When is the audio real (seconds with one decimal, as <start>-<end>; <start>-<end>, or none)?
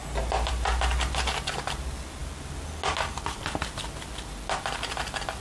0.0-5.4